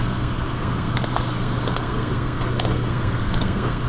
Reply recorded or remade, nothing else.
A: remade